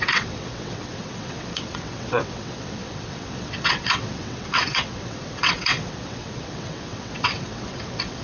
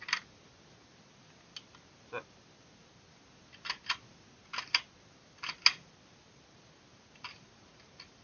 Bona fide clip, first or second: second